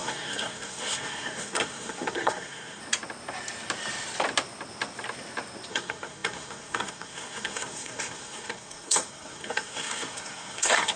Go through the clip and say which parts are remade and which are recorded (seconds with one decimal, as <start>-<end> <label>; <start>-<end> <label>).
0.0-2.8 remade; 2.8-5.7 recorded; 5.7-11.0 remade

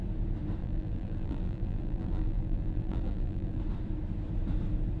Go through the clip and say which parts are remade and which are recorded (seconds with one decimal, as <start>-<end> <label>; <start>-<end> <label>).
0.0-0.6 recorded; 0.6-3.6 remade; 3.6-5.0 recorded

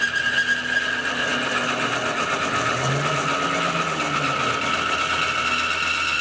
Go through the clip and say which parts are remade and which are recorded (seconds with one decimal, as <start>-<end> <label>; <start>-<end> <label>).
0.0-6.2 recorded

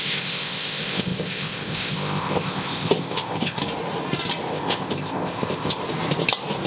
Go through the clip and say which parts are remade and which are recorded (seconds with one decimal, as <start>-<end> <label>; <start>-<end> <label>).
0.0-3.6 remade; 3.6-4.5 recorded; 4.5-5.8 remade; 5.8-6.7 recorded